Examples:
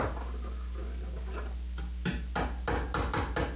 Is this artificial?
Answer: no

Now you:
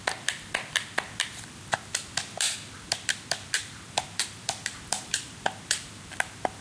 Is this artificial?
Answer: yes